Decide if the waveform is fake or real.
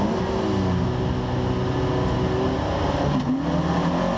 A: real